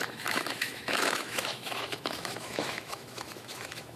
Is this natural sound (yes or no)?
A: no